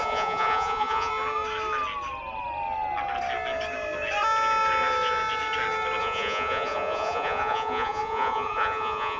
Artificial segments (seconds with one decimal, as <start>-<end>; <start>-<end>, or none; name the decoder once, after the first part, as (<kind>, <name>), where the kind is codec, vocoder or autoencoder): 0.0-1.1 (vocoder, Vocos); 6.0-9.2